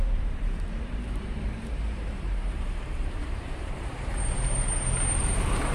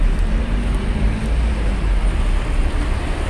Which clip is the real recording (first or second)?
second